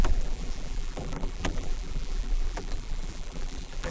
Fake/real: fake